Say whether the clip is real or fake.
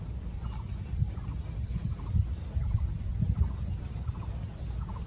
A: real